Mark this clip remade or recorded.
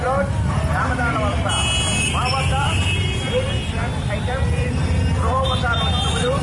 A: recorded